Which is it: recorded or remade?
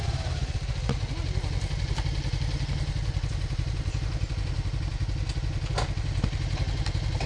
recorded